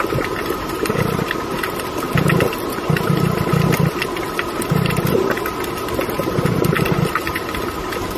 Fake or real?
real